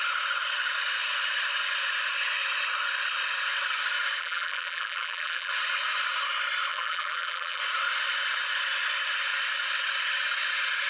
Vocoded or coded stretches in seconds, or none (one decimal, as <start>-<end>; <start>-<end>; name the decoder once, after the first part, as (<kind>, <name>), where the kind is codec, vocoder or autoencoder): 4.2-5.5 (vocoder, BigVGAN v2); 6.7-7.6

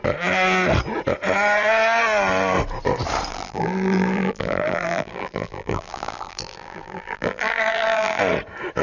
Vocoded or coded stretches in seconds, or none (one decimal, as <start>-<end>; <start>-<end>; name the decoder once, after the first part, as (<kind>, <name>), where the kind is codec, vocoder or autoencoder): 3.3-8.2 (vocoder, BigVGAN v2)

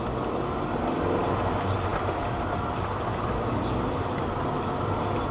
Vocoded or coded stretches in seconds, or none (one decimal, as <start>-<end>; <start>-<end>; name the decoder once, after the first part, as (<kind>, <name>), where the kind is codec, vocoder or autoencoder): none

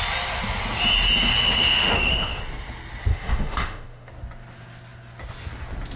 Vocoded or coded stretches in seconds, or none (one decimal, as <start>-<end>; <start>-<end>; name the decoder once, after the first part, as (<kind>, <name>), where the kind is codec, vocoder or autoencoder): 1.6-2.4 (autoencoder, DAC-VAE); 3.1-4.1

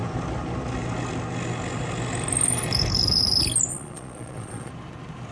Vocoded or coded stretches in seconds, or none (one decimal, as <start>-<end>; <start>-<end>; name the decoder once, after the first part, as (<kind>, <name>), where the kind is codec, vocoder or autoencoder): 3.7-4.7 (vocoder, Vocos)